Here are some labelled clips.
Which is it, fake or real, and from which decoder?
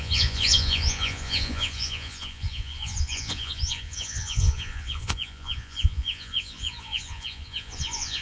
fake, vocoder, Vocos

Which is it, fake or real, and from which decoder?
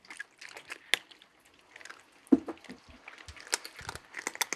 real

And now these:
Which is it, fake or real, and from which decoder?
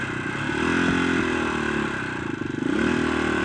real